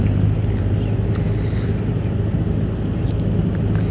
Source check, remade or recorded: recorded